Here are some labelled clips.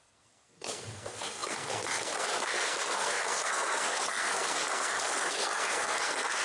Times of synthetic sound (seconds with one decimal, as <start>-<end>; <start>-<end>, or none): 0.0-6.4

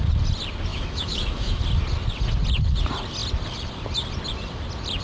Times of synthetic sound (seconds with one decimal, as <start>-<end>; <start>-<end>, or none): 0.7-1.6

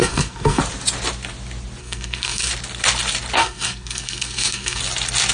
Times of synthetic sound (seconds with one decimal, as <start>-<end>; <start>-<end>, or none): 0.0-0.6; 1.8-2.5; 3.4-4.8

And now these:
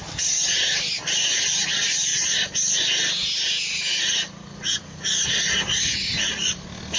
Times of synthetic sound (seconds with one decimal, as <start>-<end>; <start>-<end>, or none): none